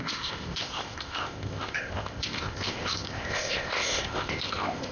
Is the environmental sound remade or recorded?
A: remade